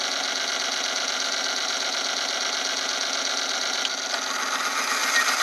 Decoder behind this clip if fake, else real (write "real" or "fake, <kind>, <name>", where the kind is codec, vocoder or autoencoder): real